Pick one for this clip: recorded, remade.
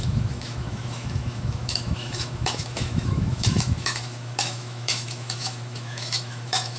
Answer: remade